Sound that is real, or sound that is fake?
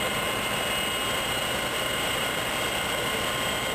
real